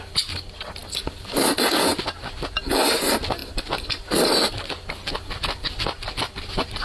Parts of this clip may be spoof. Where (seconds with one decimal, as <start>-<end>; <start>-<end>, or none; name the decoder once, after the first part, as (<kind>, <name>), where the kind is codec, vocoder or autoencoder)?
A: none